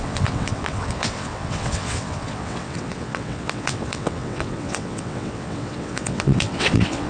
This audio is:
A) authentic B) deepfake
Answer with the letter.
B